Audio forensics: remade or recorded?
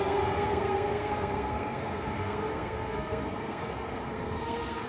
remade